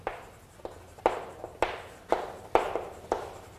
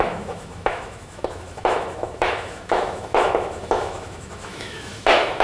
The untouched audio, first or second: first